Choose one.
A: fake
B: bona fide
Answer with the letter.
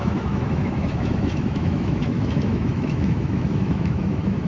A